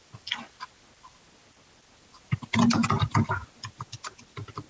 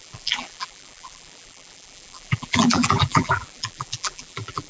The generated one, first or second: second